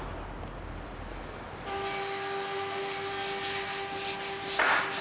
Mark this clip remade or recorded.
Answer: recorded